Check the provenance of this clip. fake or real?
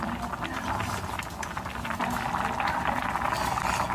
real